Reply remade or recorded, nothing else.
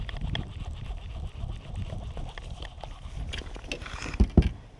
recorded